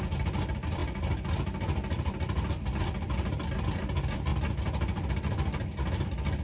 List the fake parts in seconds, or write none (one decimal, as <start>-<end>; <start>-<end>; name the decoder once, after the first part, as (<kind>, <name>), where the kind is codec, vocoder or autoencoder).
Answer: 0.0-6.4 (vocoder, BigVGAN v2)